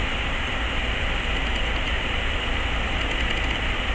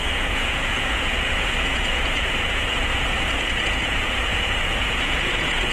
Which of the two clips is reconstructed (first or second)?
second